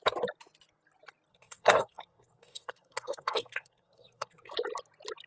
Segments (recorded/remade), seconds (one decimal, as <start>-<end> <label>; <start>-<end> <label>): 0.0-1.3 recorded; 1.3-4.5 remade; 4.5-5.3 recorded